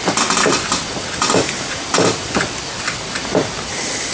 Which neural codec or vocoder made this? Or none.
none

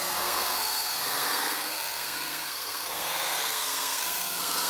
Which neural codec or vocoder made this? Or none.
codec, SNAC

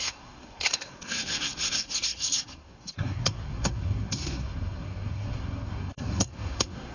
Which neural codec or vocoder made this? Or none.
codec, SNAC